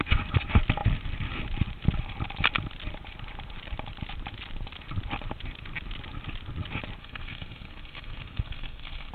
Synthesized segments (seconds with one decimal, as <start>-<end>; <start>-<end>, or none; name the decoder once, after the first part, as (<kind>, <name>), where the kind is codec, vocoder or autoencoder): 7.0-9.1 (codec, SNAC)